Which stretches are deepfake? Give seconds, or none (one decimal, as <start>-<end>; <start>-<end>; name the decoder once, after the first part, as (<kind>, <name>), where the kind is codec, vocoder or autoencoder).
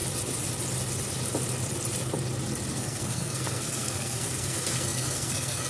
2.7-5.7 (codec, SNAC)